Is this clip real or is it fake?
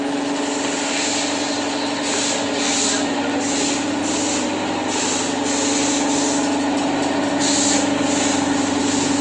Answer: real